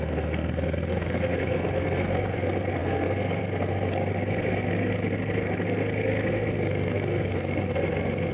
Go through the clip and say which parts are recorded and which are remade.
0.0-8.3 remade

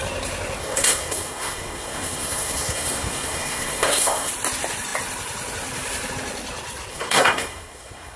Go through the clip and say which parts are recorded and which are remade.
0.0-0.6 recorded; 0.6-4.3 remade; 4.3-6.9 recorded; 6.9-8.2 remade